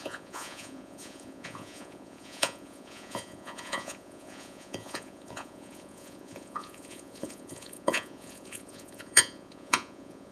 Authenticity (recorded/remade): remade